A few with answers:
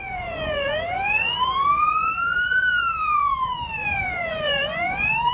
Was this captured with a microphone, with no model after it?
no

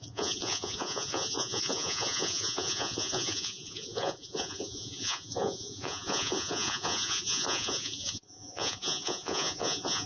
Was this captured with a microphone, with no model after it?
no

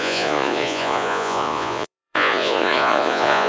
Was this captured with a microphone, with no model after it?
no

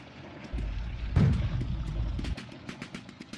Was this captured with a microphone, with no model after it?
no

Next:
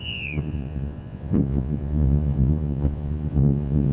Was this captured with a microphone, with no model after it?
no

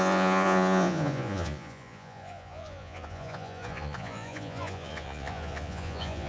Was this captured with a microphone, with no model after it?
no